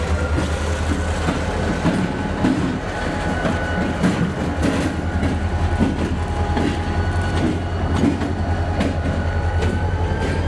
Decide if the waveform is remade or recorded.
recorded